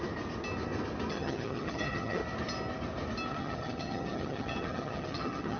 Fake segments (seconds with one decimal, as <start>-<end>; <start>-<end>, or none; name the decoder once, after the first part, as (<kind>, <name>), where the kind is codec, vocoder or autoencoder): 1.1-2.2 (vocoder, HiFi-GAN); 3.3-5.6